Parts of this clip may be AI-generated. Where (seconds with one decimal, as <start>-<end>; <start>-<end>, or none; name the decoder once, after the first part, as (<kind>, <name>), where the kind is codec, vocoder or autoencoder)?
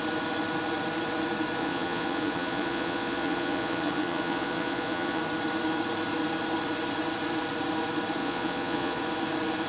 1.6-5.2 (vocoder, Vocos); 8.2-9.0